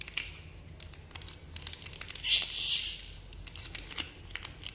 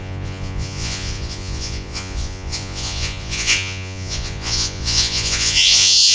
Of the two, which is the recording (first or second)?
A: first